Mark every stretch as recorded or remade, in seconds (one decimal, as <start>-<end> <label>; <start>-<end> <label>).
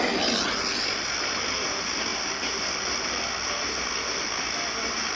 0.0-5.2 recorded